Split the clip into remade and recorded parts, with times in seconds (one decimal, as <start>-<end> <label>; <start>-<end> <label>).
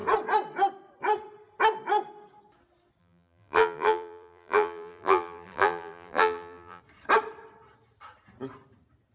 0.0-3.0 recorded; 3.0-6.8 remade; 6.8-9.1 recorded